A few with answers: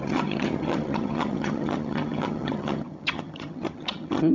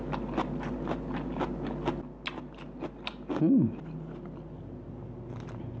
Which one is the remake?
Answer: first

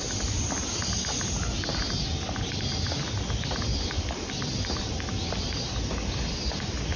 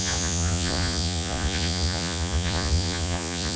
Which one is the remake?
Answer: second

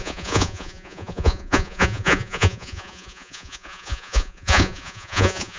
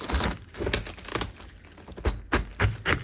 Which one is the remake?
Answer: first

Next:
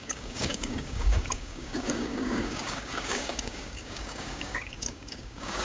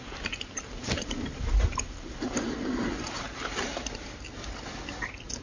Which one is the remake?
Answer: first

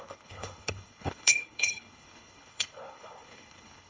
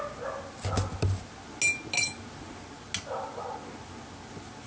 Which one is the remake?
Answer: first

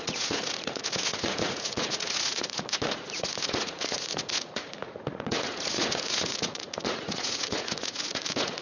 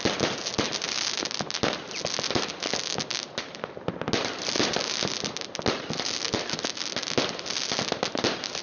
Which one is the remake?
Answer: first